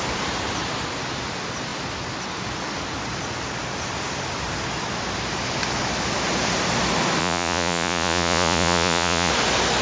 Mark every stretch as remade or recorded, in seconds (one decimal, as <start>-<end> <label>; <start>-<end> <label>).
0.0-7.2 recorded; 7.2-9.3 remade; 9.3-9.8 recorded